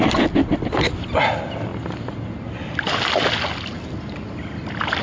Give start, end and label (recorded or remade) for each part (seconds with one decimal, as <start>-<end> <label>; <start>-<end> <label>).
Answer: 0.0-5.0 recorded